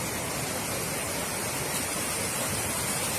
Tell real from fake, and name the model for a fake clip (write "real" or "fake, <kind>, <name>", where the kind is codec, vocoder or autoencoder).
real